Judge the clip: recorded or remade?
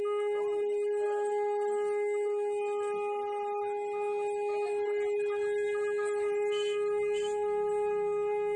recorded